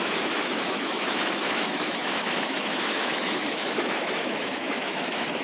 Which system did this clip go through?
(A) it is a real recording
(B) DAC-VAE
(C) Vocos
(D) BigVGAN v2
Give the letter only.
B